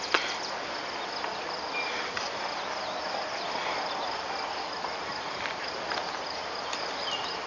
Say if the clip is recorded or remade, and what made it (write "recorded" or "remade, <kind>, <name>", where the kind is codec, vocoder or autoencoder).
recorded